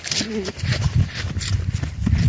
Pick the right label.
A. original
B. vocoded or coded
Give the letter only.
B